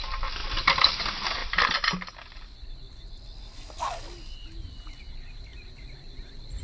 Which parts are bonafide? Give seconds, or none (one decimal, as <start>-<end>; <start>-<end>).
0.0-6.6